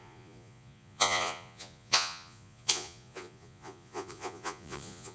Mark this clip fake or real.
fake